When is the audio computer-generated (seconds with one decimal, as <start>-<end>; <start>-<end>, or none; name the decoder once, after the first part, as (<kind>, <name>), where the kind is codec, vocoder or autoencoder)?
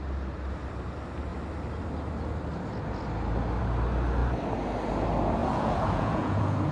5.4-6.7 (vocoder, Vocos)